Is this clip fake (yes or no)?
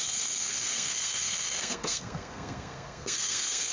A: yes